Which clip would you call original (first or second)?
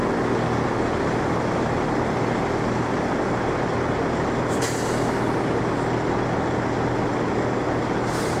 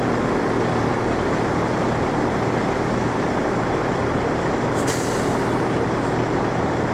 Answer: first